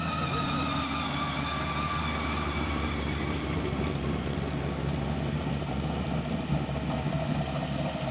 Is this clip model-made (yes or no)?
no